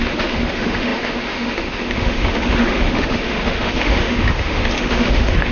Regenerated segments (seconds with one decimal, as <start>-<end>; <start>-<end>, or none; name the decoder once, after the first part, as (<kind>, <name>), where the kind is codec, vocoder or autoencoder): 0.0-5.5 (autoencoder, DAC-VAE)

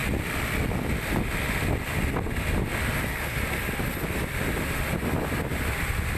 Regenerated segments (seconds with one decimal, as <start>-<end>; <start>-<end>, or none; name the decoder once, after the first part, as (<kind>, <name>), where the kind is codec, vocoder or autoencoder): 0.0-2.1 (vocoder, BigVGAN v2)

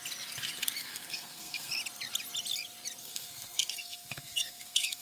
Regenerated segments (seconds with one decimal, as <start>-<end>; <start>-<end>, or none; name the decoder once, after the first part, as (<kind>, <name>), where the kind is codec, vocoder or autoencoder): 0.8-1.7 (codec, SNAC); 3.0-5.0

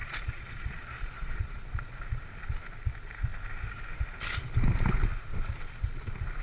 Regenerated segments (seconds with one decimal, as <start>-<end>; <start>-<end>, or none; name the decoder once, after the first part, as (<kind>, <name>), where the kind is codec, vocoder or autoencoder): 0.0-1.6 (vocoder, Vocos)

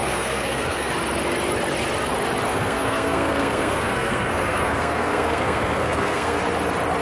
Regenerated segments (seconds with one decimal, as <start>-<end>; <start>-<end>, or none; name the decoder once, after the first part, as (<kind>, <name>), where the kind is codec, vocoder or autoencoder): 0.0-0.9 (codec, SNAC); 2.5-6.4

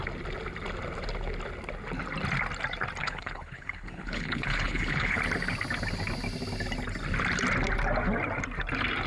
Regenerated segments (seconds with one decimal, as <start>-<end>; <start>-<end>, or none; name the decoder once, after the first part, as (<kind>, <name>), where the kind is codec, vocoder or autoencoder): 3.0-5.2 (codec, HILCodec)

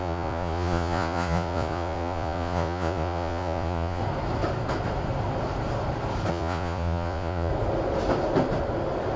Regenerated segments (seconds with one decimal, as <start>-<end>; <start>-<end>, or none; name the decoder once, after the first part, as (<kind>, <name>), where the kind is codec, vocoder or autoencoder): 0.0-4.0 (vocoder, Vocos); 6.3-7.5

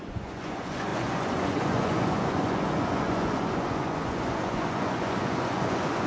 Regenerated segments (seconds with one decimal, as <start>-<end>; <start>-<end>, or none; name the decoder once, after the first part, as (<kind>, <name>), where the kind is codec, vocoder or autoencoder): 0.0-6.1 (vocoder, Vocos)